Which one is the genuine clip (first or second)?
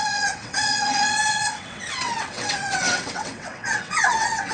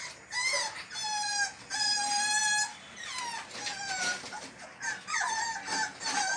second